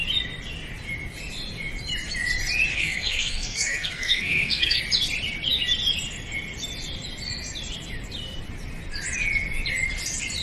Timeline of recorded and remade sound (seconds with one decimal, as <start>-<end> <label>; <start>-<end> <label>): 0.0-2.7 recorded; 2.7-4.8 remade; 4.8-10.4 recorded